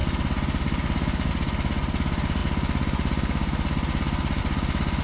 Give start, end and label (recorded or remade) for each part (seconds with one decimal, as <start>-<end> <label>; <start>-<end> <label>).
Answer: 0.0-5.0 recorded